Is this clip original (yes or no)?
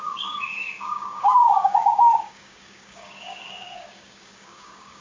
no